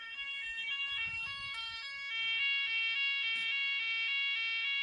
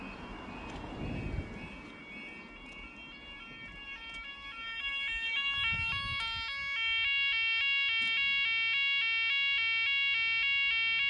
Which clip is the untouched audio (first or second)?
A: second